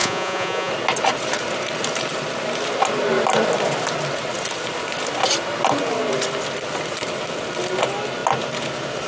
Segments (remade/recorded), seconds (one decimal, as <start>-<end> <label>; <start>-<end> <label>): 0.0-0.7 remade; 0.7-9.1 recorded